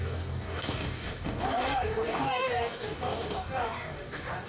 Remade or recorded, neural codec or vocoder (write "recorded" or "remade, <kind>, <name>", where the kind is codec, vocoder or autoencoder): remade, codec, DAC